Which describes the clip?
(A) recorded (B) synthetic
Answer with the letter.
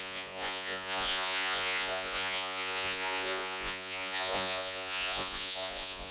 B